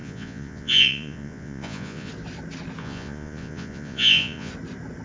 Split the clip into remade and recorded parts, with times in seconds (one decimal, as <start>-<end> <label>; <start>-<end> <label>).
0.0-2.1 remade; 2.1-2.8 recorded; 2.8-4.5 remade; 4.5-5.0 recorded

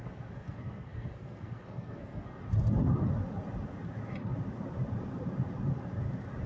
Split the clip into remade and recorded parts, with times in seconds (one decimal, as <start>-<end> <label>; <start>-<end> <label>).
0.0-2.4 remade; 2.4-6.5 recorded

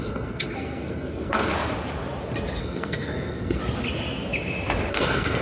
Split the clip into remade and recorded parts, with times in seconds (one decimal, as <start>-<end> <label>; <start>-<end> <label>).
0.0-1.5 remade; 1.5-2.6 recorded; 2.6-3.6 remade; 3.6-4.9 recorded; 4.9-5.4 remade

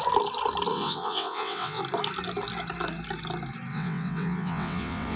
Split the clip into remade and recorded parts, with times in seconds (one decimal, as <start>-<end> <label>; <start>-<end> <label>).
0.0-0.7 recorded; 0.7-1.8 remade; 1.8-3.7 recorded; 3.7-5.2 remade